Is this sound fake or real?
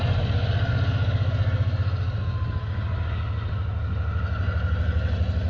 real